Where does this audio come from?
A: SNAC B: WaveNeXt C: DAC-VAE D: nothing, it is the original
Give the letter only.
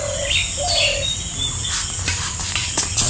D